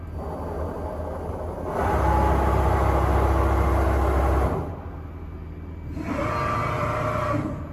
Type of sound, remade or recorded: recorded